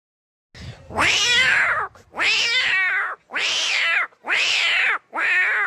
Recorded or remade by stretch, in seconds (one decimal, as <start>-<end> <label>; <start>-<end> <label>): 0.0-5.7 recorded